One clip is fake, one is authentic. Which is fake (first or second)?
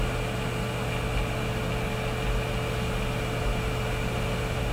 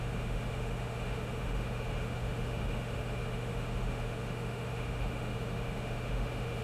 second